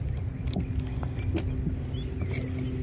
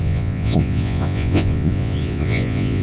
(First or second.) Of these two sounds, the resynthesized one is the second